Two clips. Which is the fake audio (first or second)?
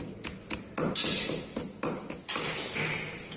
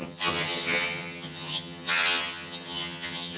second